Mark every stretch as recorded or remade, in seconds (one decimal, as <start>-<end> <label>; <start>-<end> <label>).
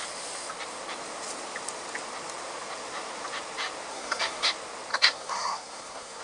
0.0-3.9 recorded; 3.9-4.5 remade; 4.5-4.9 recorded; 4.9-6.2 remade